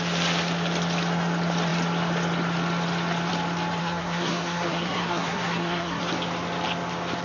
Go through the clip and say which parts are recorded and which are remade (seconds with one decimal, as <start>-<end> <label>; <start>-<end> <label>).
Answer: 0.0-3.8 recorded; 3.8-6.0 remade; 6.0-7.2 recorded